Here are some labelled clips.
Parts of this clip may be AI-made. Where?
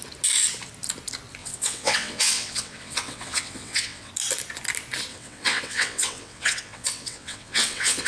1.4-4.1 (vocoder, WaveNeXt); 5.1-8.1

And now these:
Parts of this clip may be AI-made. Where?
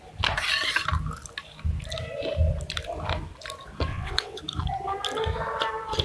3.9-4.4 (vocoder, WaveNeXt)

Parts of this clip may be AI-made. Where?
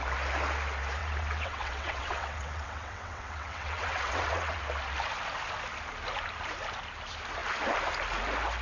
1.0-4.6 (vocoder, WaveNeXt)